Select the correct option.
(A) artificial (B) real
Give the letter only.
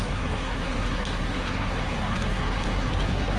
A